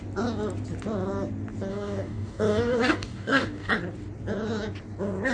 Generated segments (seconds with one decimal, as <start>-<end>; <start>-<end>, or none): 1.7-3.7